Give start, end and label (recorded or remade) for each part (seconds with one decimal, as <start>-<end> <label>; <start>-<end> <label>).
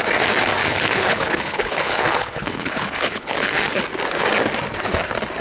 0.0-0.6 recorded; 0.6-3.8 remade; 3.8-5.4 recorded